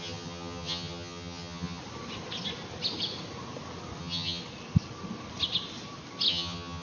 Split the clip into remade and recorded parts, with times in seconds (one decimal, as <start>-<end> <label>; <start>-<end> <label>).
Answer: 0.0-1.8 remade; 1.8-4.0 recorded; 4.0-4.4 remade; 4.4-6.3 recorded; 6.3-6.8 remade